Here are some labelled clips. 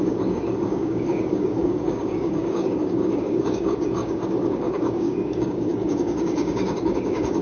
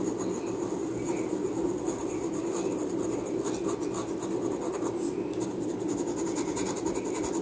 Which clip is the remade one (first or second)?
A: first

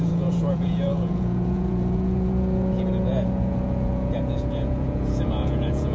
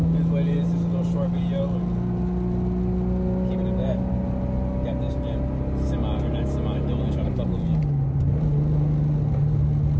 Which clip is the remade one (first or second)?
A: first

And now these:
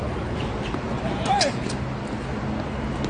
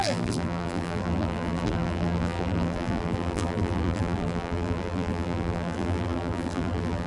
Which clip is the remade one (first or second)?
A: second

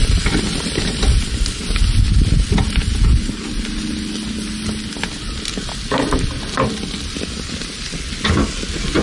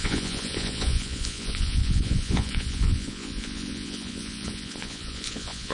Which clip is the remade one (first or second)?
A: second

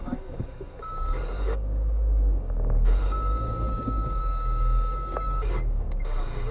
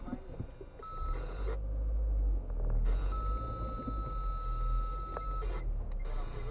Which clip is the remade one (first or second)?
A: first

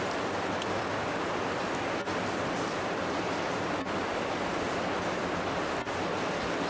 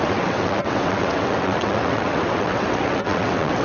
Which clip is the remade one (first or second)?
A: second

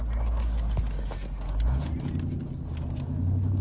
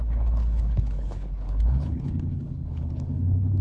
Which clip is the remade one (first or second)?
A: second